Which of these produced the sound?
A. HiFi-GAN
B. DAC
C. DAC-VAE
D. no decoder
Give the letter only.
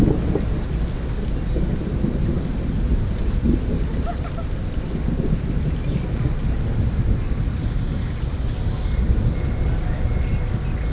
D